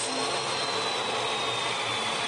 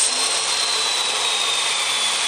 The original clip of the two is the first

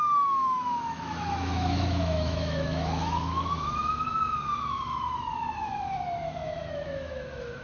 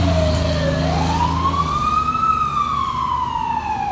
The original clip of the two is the second